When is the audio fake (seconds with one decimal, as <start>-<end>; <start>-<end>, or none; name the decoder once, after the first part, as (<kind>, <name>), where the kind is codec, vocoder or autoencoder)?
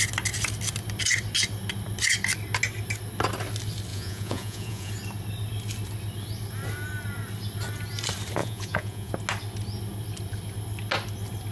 3.9-4.9 (vocoder, Vocos); 8.4-9.1